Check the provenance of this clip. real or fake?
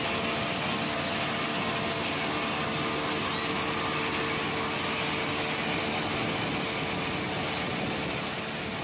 real